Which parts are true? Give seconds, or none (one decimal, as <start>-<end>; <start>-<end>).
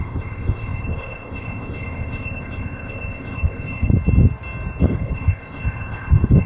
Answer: 3.9-4.8